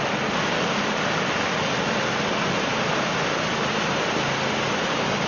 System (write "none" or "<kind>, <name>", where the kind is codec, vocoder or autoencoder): none